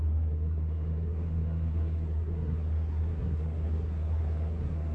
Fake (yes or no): yes